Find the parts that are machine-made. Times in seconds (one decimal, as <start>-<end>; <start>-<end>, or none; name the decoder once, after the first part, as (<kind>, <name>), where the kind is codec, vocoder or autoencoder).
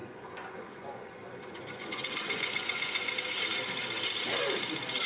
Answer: 0.0-3.1 (vocoder, Vocos)